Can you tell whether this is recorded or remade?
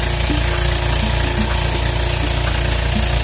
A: recorded